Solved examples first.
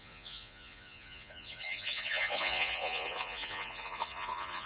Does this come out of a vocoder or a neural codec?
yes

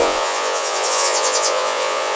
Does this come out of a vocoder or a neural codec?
yes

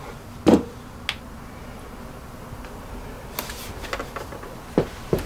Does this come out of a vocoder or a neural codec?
no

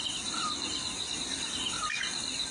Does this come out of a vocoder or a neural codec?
no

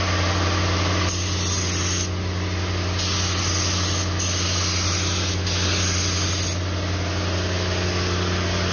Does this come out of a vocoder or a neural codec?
no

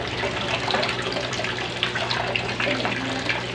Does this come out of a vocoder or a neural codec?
yes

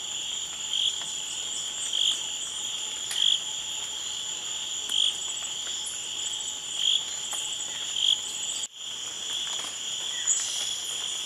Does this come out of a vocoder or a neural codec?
no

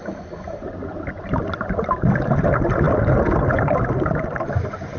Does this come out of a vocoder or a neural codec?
no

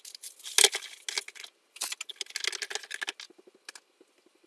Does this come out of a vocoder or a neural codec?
no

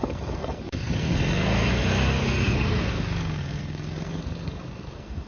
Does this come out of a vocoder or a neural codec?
yes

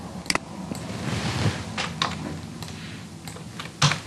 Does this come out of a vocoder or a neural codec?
no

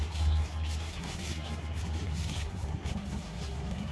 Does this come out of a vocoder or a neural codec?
yes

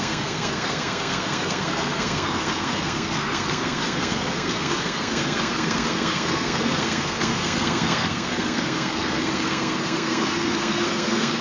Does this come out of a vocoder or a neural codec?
yes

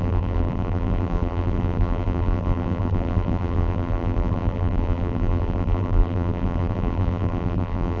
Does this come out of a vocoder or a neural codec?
yes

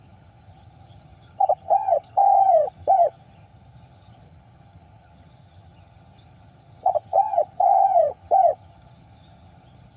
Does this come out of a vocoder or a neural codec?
yes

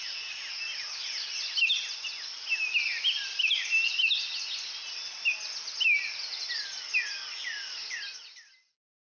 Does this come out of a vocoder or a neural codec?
no